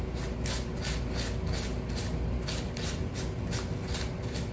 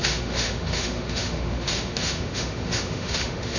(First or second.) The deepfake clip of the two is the second